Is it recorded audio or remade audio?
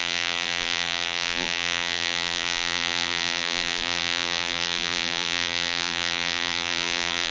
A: remade